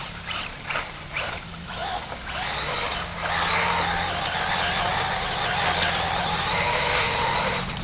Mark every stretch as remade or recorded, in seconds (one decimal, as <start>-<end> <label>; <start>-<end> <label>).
0.0-1.8 remade; 1.8-6.2 recorded; 6.2-7.8 remade